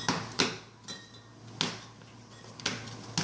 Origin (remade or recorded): recorded